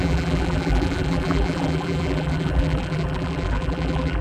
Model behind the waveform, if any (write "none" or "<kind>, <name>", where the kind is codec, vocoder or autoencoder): vocoder, BigVGAN v2